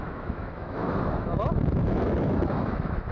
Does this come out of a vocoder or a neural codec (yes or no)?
yes